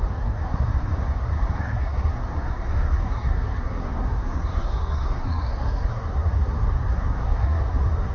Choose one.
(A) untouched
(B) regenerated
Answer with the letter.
B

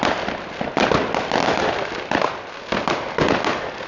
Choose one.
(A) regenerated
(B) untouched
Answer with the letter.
B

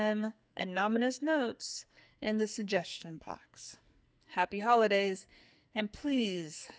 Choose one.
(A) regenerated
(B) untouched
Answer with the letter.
A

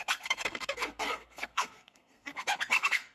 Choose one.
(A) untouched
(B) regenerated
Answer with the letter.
B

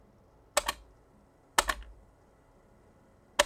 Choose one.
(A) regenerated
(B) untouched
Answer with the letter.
B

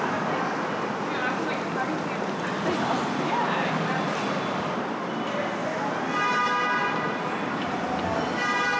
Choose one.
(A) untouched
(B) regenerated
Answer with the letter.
A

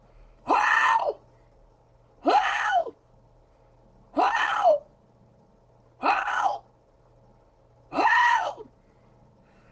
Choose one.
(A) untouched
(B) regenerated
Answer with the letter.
A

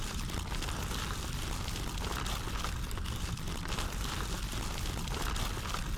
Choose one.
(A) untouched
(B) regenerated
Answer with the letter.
A